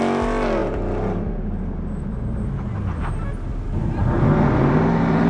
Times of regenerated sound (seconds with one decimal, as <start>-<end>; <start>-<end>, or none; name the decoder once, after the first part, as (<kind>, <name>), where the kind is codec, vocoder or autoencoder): none